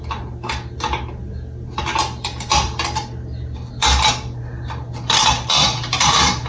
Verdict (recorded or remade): recorded